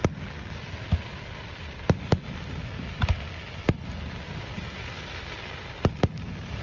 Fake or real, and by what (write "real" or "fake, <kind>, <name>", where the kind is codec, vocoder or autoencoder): real